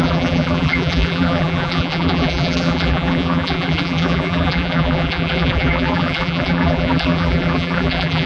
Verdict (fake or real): fake